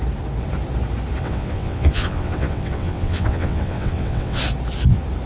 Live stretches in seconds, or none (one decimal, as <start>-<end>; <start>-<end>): 0.0-1.2; 4.4-5.3

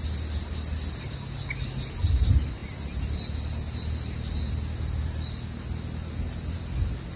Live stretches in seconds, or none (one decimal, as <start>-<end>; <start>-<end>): 0.0-7.2